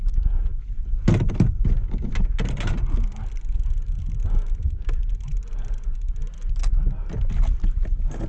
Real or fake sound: real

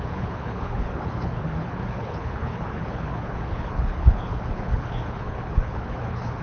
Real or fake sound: fake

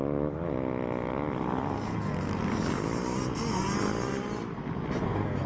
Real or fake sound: real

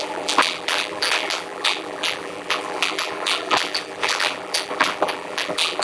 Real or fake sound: fake